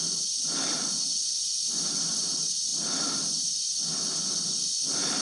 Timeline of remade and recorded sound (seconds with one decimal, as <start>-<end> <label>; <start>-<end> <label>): 0.0-5.2 recorded

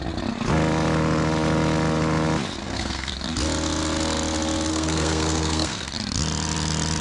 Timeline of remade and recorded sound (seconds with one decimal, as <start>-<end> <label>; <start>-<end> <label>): 0.0-2.6 recorded; 2.6-3.1 remade; 3.1-4.7 recorded; 4.7-5.9 remade; 5.9-7.0 recorded

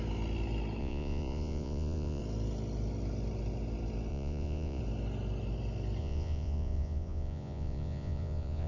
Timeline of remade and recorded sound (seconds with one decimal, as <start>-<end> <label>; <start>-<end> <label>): 0.0-0.8 recorded; 0.8-2.2 remade; 2.2-4.1 recorded; 4.1-4.8 remade; 4.8-6.0 recorded; 6.0-8.7 remade